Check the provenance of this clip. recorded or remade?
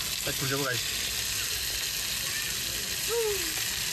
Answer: recorded